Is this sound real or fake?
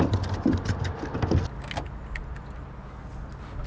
real